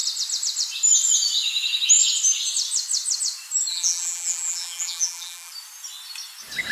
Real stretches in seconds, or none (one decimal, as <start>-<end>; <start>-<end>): 0.0-3.7; 5.5-6.7